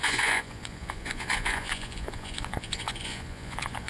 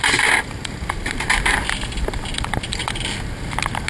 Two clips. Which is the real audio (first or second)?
second